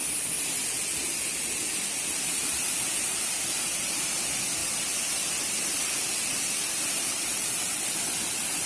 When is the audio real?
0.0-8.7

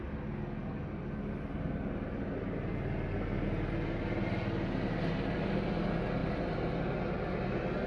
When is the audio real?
0.0-7.9

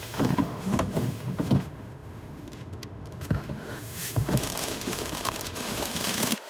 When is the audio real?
none

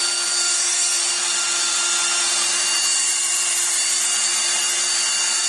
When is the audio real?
0.0-5.5

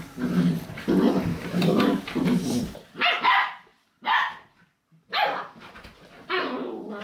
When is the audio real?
0.0-1.3; 2.0-7.0